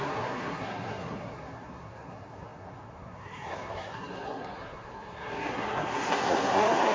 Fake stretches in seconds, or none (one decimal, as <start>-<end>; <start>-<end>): 0.0-6.9